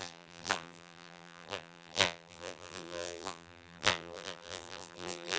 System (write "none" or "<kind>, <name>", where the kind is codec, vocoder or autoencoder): vocoder, BigVGAN v2